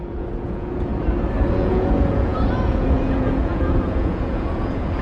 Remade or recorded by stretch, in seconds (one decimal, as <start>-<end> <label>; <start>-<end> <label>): 0.0-0.9 remade; 0.9-1.5 recorded; 1.5-5.0 remade